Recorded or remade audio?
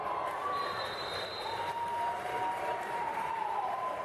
remade